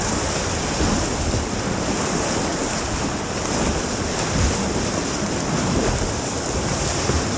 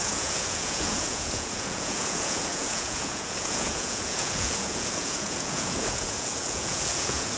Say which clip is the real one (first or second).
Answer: first